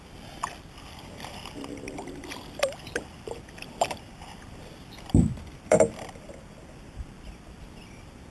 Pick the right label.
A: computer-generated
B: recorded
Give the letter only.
A